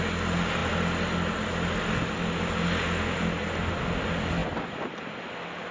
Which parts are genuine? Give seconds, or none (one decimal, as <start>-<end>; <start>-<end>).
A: 0.0-5.7